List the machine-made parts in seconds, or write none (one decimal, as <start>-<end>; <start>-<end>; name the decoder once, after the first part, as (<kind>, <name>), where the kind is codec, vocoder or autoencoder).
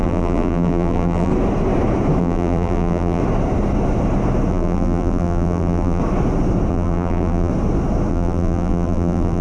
0.0-1.3 (vocoder, BigVGAN v2); 2.2-3.2; 4.5-6.0; 6.7-7.5; 8.1-9.4